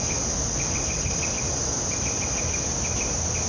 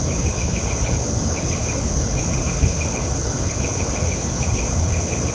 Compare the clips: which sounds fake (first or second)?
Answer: second